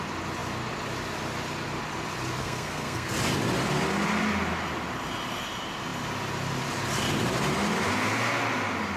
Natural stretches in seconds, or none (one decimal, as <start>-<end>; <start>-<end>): 0.0-2.4; 3.1-9.0